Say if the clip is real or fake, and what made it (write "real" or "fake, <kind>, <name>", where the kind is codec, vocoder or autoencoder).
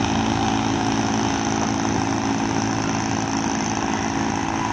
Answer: real